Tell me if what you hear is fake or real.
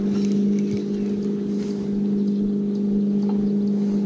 real